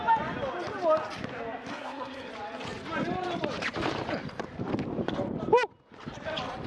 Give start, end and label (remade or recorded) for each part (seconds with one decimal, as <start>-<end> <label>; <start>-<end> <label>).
0.0-1.7 recorded; 1.7-2.3 remade; 2.3-6.7 recorded